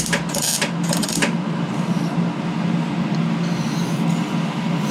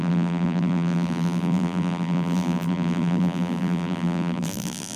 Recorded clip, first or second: first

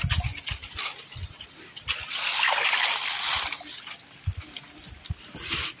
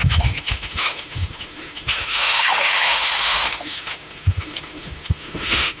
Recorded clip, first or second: first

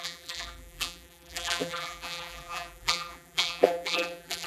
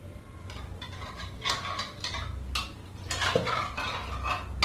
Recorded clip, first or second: second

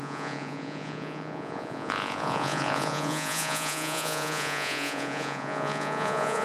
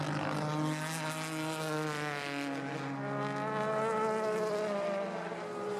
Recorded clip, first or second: second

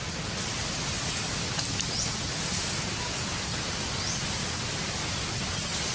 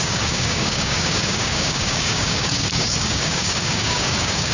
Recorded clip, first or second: first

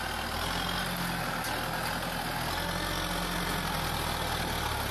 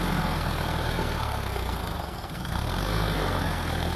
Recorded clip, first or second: first